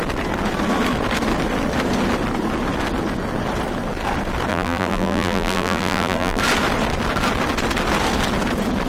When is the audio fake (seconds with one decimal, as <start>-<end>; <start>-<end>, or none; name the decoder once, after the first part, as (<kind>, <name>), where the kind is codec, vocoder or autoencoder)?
4.5-6.4 (vocoder, BigVGAN v2)